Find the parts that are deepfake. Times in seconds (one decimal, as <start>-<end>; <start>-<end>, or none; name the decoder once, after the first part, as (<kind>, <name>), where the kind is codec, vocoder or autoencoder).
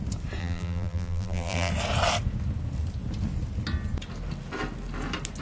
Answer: 0.4-1.7 (vocoder, BigVGAN v2)